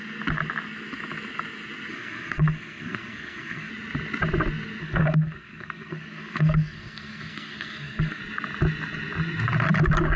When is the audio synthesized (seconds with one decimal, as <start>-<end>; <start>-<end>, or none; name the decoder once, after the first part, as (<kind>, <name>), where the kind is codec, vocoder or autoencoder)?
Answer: 1.9-3.7 (codec, SNAC); 4.8-8.2